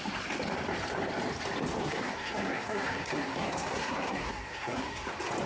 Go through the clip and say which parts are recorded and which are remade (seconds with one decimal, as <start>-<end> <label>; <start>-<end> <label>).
0.0-1.8 recorded; 1.8-5.1 remade; 5.1-5.5 recorded